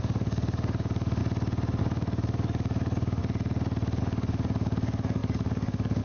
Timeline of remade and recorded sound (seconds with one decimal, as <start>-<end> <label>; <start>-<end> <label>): 0.0-1.2 remade; 1.2-1.8 recorded; 1.8-3.2 remade; 3.2-4.0 recorded; 4.0-6.0 remade